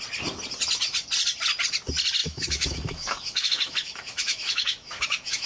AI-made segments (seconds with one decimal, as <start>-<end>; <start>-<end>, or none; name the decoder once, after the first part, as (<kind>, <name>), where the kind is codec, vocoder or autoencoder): 2.2-5.5 (autoencoder, DAC-VAE)